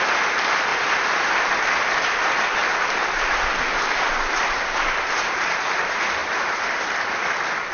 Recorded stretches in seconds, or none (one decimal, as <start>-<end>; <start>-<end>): 0.7-2.2; 2.6-3.2